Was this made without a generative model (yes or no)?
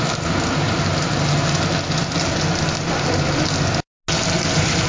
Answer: yes